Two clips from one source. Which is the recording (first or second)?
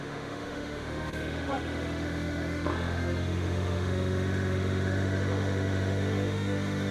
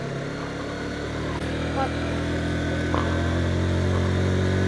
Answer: second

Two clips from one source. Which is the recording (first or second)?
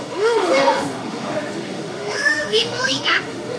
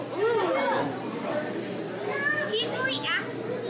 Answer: second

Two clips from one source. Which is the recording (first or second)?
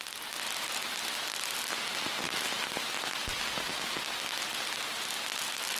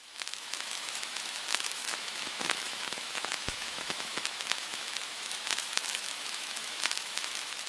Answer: first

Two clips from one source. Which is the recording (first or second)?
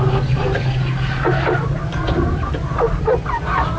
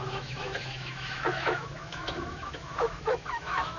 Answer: first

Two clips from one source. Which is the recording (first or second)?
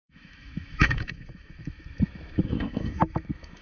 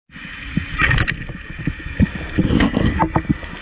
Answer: second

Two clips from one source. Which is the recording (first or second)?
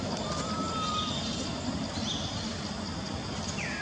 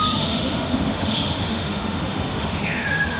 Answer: first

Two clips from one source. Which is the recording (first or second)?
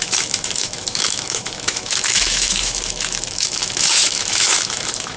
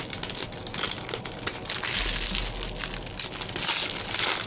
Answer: second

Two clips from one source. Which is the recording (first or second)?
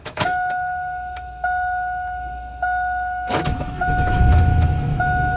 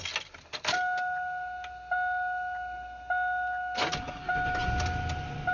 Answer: second